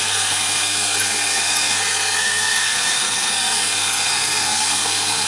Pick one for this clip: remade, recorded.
remade